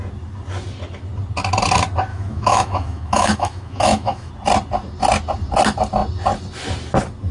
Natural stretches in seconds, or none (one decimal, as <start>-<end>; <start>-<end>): 0.0-2.1; 4.3-7.3